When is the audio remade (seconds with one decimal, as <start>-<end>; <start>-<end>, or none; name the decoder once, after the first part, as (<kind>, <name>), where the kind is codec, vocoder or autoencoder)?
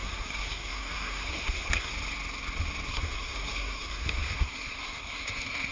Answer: 0.0-1.9 (codec, SNAC); 2.9-5.7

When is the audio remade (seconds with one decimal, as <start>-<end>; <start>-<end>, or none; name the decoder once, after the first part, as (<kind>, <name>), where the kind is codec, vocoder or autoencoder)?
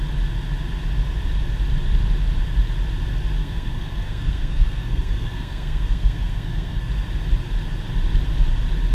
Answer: 3.4-6.9 (codec, SNAC)